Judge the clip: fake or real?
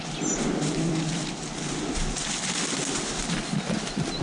real